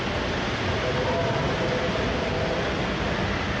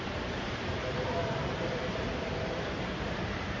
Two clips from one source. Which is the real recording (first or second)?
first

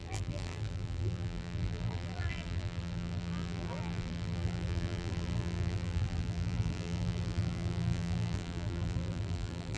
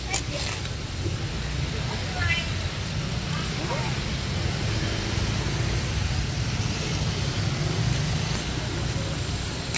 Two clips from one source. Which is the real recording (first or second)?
second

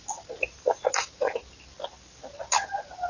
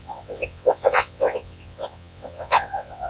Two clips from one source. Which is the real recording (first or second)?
first